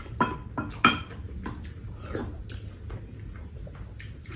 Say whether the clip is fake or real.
real